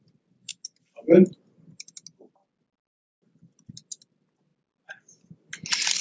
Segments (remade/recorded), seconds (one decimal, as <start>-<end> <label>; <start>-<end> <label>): 0.0-6.0 recorded